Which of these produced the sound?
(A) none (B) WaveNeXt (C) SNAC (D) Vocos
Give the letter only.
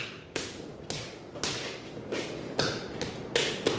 A